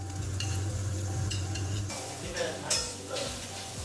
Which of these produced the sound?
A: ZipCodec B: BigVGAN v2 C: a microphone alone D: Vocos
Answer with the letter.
D